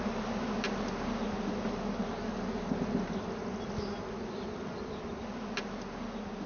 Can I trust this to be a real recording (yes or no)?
yes